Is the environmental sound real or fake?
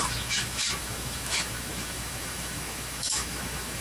fake